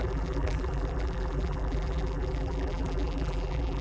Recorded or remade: remade